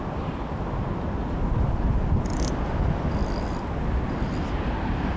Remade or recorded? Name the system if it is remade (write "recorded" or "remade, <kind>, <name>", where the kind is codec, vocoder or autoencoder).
recorded